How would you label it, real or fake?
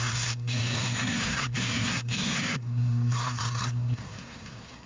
fake